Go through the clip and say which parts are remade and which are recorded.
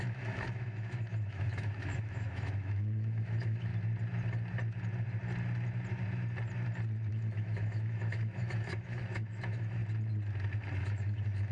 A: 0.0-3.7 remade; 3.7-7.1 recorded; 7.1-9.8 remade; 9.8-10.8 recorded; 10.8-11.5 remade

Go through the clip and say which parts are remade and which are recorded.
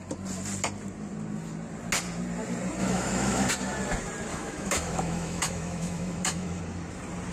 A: 0.0-2.8 recorded; 2.8-3.5 remade; 3.5-4.3 recorded; 4.3-6.6 remade; 6.6-7.3 recorded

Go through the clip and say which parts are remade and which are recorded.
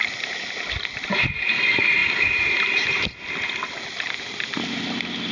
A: 0.0-5.3 recorded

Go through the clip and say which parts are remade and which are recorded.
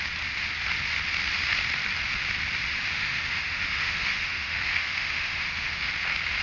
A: 0.0-2.9 recorded; 2.9-5.9 remade; 5.9-6.4 recorded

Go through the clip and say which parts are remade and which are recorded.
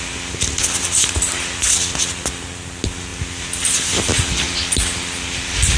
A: 0.0-5.8 recorded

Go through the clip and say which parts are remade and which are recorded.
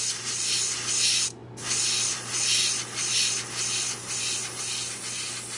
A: 0.0-5.6 recorded